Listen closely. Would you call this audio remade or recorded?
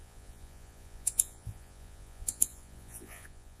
remade